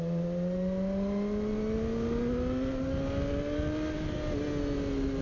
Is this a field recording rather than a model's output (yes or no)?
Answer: yes